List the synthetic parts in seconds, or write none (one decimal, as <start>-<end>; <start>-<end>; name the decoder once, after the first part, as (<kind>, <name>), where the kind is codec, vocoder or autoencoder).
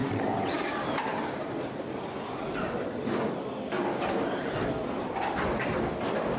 none